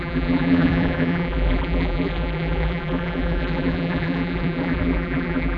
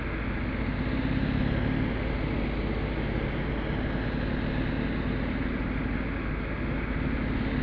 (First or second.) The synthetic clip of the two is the first